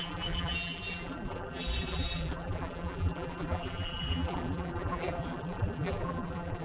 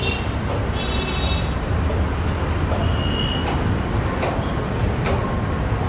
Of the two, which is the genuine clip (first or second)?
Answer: second